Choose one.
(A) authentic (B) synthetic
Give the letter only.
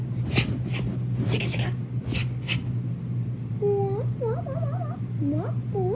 A